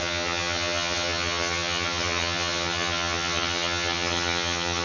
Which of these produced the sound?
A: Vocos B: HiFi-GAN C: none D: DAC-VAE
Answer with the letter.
B